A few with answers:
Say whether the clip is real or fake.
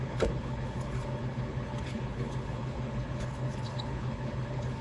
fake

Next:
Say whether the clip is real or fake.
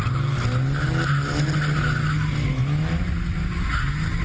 real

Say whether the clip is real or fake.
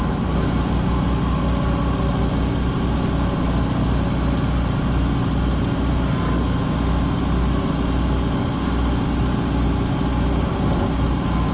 real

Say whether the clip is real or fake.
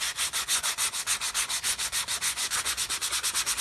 fake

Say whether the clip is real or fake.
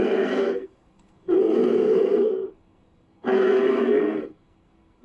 fake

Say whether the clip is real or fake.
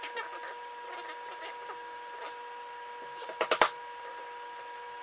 real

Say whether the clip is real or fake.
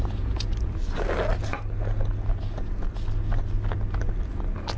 real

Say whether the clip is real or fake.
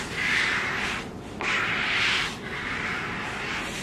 real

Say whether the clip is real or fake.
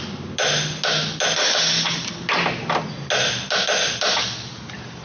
real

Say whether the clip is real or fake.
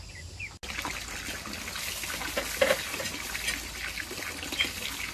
real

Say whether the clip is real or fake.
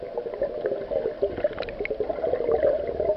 real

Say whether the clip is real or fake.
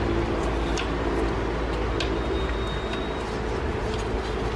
real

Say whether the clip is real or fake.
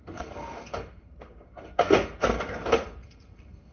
fake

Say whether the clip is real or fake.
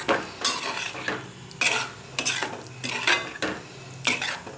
real